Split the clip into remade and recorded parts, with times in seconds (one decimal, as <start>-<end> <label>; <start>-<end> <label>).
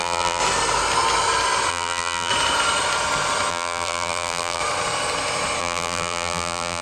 0.0-0.4 remade; 0.4-1.7 recorded; 1.7-2.3 remade; 2.3-3.5 recorded; 3.5-4.6 remade; 4.6-5.6 recorded; 5.6-6.8 remade